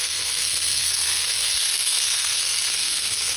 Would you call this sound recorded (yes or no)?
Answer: no